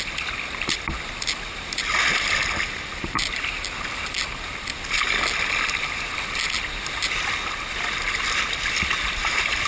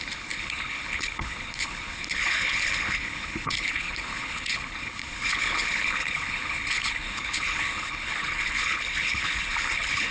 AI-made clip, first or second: second